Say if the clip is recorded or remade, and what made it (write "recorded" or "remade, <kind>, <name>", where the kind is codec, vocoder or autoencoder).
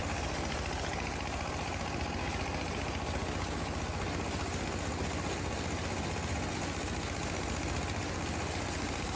recorded